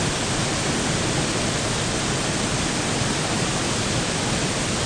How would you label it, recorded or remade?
recorded